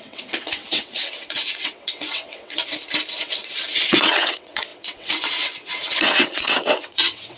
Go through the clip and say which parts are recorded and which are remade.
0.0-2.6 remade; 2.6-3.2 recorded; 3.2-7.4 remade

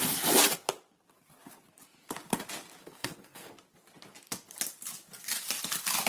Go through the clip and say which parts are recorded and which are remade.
0.0-2.8 recorded; 2.8-3.5 remade; 3.5-6.1 recorded